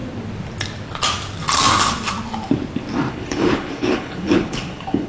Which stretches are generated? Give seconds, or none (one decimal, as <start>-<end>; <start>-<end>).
3.1-5.1